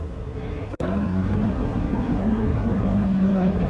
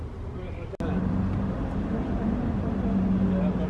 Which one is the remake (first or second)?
first